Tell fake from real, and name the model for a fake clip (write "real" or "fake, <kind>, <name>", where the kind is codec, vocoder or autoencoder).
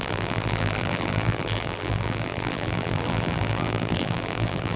fake, vocoder, BigVGAN v2